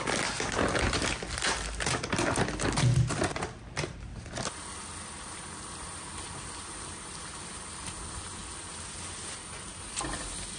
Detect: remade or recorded recorded